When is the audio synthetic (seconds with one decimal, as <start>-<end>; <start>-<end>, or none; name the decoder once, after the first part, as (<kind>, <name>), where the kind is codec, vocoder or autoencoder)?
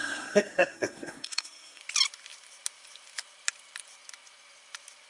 0.0-1.8 (codec, SNAC)